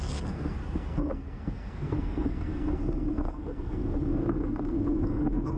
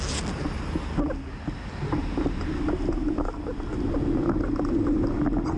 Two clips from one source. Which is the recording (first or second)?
second